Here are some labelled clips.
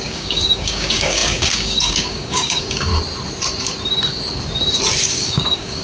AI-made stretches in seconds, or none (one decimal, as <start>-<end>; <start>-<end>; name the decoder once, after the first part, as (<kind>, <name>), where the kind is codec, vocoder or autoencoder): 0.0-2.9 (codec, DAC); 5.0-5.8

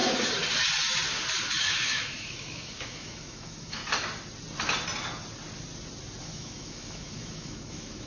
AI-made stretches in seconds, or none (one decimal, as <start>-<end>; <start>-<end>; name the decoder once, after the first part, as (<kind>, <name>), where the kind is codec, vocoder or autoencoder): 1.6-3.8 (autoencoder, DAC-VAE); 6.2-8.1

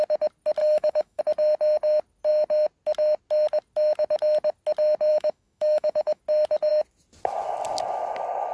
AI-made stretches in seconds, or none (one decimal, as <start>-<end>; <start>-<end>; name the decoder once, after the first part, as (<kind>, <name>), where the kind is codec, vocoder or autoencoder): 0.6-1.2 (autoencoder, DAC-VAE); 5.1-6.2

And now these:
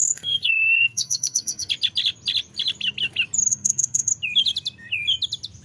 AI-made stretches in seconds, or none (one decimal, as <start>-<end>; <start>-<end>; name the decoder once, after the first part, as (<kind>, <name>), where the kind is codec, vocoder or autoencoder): 0.0-1.7 (codec, SNAC); 3.5-4.1

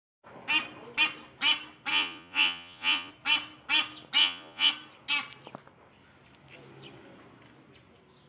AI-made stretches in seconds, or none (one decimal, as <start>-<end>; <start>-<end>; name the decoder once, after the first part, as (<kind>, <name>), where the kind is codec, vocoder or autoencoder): 1.9-3.1 (vocoder, Vocos); 4.2-4.7